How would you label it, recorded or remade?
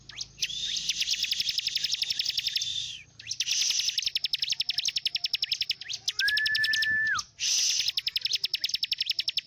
recorded